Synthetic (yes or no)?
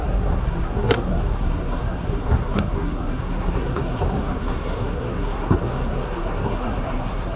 yes